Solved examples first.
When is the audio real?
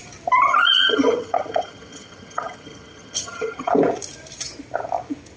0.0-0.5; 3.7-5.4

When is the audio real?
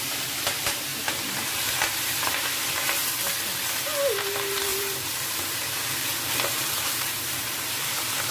0.9-3.7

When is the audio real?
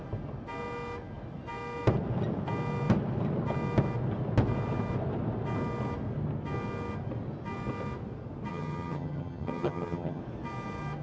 0.0-8.5; 10.2-11.0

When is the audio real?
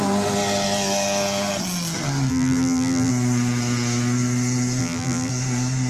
0.0-2.3; 3.1-4.8; 5.3-5.9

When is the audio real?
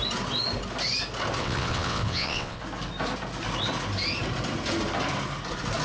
0.0-1.4; 2.6-5.8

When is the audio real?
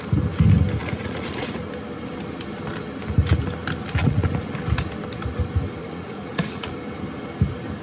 0.0-0.8; 1.6-4.0; 4.6-5.8; 6.7-7.8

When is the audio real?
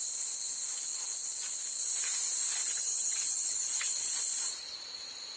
0.0-2.6; 4.1-5.4